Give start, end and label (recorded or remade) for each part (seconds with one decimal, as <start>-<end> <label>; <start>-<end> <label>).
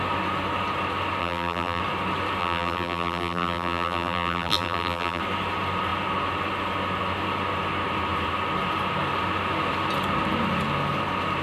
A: 0.0-1.2 recorded; 1.2-1.8 remade; 1.8-2.4 recorded; 2.4-5.2 remade; 5.2-11.4 recorded